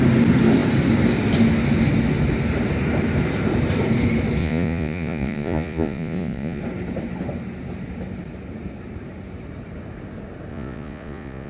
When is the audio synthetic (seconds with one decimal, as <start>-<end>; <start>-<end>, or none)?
4.4-6.6; 10.5-11.5